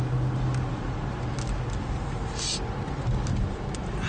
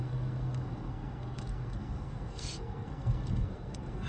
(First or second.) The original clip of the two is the first